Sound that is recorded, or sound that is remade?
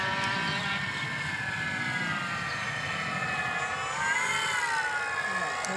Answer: recorded